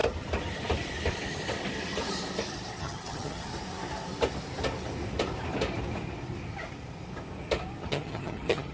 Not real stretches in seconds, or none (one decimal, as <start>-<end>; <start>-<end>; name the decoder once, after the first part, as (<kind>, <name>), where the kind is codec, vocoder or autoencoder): 2.8-3.5 (vocoder, HiFi-GAN); 7.8-8.7